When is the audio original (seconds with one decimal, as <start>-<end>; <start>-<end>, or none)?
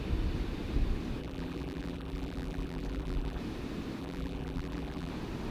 0.0-1.2; 3.4-4.0; 5.1-5.5